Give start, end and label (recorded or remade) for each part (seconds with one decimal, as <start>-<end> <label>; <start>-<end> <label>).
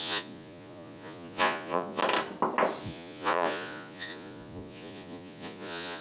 0.0-2.0 remade; 2.0-2.8 recorded; 2.8-6.0 remade